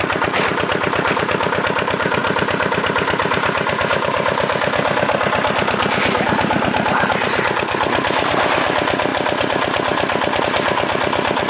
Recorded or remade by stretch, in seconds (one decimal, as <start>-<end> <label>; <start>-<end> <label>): 0.0-11.5 recorded